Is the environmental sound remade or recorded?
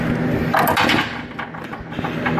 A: recorded